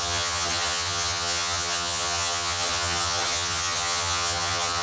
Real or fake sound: fake